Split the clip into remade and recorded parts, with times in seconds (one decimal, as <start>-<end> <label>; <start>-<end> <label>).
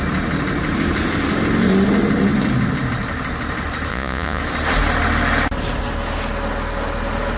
0.0-3.9 recorded; 3.9-4.4 remade; 4.4-7.4 recorded